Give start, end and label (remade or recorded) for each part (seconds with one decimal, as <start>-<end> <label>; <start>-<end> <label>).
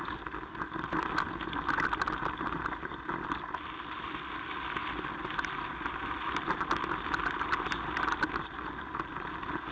0.0-9.7 recorded